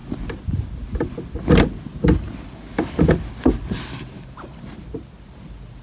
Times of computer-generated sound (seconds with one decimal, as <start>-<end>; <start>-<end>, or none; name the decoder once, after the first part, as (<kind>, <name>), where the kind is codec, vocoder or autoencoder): none